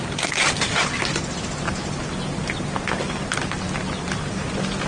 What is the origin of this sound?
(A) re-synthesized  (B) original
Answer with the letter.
B